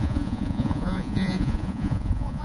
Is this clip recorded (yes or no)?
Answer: no